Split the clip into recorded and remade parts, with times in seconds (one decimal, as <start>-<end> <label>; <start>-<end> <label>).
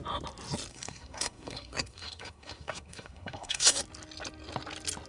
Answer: 0.0-0.7 recorded; 0.7-3.8 remade; 3.8-5.1 recorded